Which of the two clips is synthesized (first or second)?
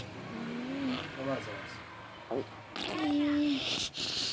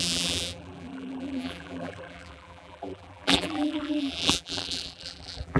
second